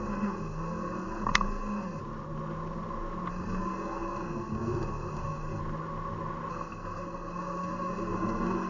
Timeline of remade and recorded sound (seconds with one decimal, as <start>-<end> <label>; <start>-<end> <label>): 0.0-2.0 remade; 2.0-3.3 recorded; 3.3-5.6 remade; 5.6-6.5 recorded; 6.5-8.7 remade